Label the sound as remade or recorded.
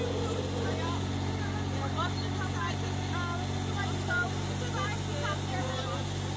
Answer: recorded